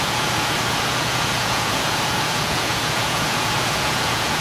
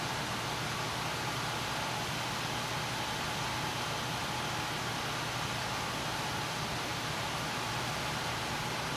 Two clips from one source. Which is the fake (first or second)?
first